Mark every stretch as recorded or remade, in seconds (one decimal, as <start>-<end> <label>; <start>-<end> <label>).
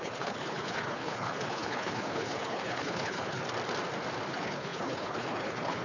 0.0-3.4 remade; 3.4-4.3 recorded; 4.3-5.8 remade